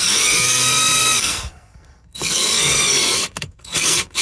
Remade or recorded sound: remade